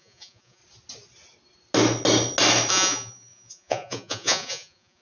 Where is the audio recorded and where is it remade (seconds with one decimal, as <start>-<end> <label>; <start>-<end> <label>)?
0.0-0.6 remade; 0.6-2.7 recorded; 2.7-5.0 remade